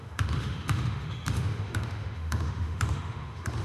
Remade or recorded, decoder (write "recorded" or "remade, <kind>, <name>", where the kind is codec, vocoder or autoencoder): remade, autoencoder, DAC-VAE